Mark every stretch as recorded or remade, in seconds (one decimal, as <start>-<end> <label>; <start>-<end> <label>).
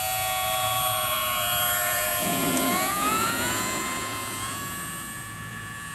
0.0-5.9 remade